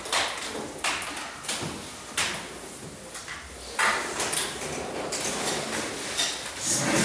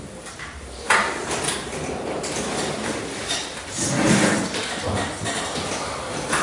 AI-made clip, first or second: second